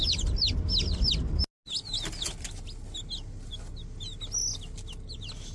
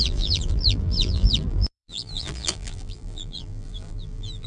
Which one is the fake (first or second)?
second